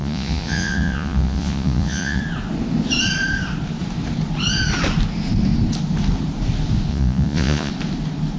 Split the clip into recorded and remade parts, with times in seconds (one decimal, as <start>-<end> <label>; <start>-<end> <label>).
0.0-2.2 remade; 2.2-6.9 recorded; 6.9-7.7 remade; 7.7-8.4 recorded